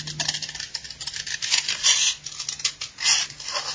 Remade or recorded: recorded